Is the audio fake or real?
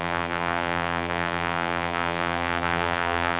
fake